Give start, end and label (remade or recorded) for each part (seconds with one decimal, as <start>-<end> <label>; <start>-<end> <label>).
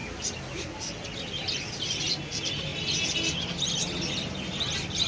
0.0-5.1 recorded